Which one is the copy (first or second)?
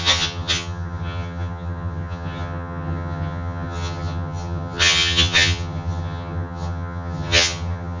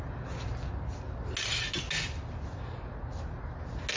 first